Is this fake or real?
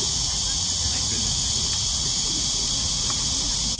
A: fake